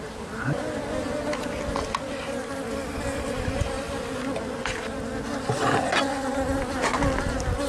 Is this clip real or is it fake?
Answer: real